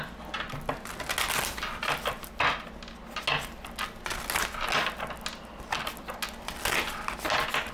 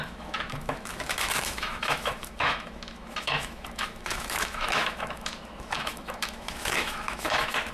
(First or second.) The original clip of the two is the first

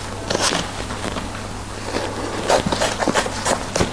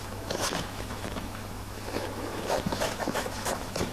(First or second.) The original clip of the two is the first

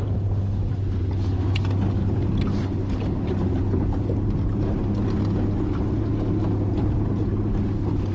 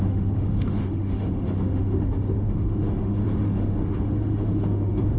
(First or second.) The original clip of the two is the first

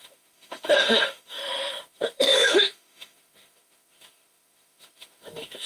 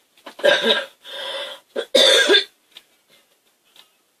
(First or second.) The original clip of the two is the second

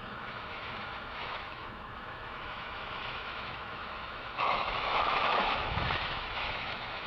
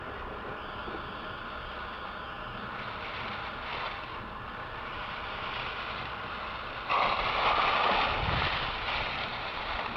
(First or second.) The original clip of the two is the second